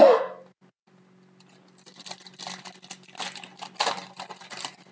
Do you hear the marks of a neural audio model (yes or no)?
no